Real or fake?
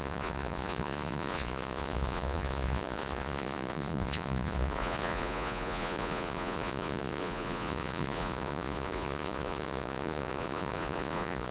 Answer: fake